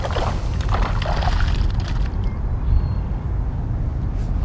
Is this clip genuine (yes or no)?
yes